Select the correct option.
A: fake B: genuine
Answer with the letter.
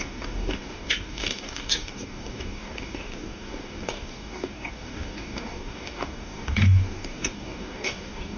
A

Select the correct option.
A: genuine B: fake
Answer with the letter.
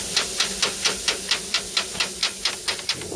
A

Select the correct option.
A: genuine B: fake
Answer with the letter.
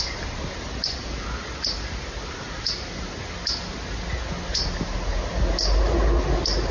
A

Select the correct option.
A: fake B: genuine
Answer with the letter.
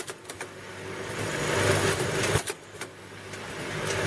B